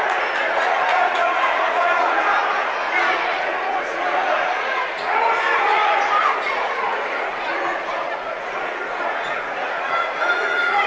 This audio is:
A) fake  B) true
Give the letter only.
A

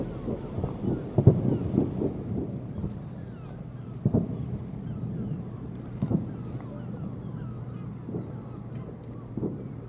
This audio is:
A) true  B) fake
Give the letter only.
A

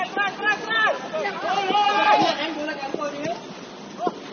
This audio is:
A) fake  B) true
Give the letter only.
B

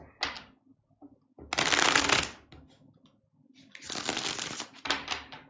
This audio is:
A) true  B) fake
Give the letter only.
A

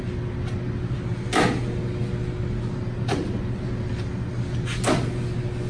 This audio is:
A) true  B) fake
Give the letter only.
A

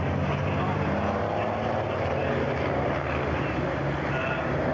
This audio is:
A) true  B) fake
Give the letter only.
A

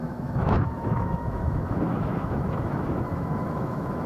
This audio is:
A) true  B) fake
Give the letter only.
B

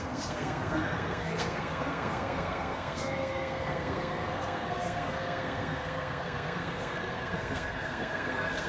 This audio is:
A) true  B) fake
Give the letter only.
B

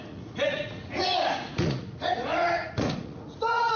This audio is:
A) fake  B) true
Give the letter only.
A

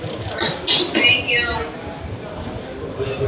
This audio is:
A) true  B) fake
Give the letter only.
A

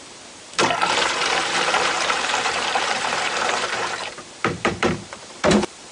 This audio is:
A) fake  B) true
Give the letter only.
A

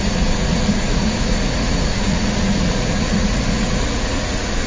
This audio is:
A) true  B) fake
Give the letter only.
B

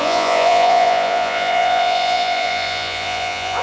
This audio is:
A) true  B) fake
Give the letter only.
B